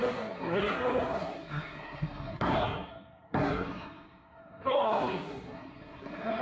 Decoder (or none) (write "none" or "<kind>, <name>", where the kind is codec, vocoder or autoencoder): codec, SNAC